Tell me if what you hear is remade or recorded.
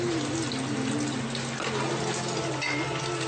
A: recorded